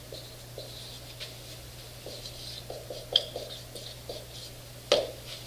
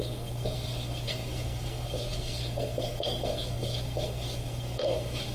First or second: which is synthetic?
second